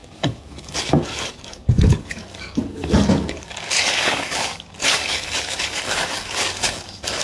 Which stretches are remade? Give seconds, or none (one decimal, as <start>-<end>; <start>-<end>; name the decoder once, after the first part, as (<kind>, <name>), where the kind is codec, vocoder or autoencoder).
0.0-7.2 (codec, DAC)